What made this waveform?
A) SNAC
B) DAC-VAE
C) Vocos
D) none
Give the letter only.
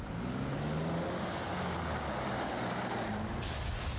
D